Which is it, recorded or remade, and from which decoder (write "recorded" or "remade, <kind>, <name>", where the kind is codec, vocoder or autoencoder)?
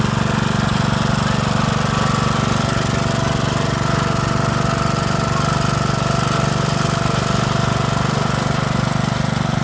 recorded